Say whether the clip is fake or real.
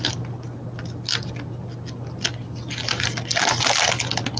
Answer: real